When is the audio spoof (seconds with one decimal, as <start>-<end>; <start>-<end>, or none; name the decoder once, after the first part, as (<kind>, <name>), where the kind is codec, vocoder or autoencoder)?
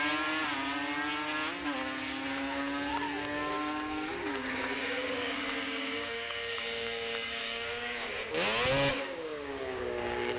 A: 2.9-8.1 (codec, DAC); 8.9-10.4